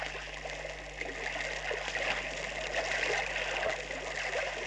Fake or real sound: real